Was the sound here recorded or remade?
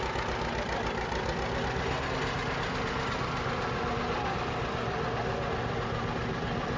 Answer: recorded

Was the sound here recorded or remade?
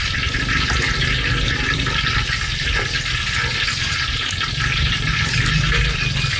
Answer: recorded